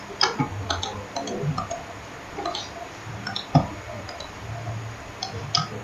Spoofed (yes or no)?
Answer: no